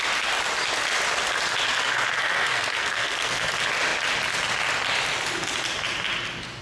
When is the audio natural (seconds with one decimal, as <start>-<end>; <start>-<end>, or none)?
0.0-1.7; 3.5-6.6